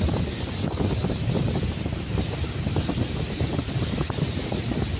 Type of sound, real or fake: real